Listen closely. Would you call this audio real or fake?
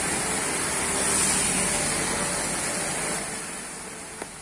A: real